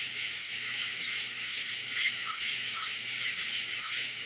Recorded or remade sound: remade